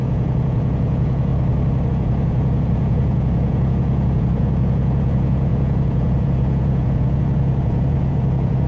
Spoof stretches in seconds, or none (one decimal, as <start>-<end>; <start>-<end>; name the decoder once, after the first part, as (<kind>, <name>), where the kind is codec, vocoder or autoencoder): 0.0-1.3 (vocoder, Vocos); 1.9-8.7